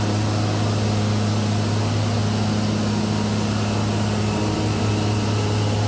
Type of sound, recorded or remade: recorded